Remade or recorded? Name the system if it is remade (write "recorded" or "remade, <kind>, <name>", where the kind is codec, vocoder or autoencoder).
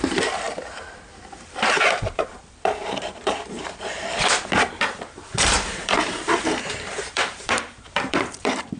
remade, vocoder, BigVGAN v2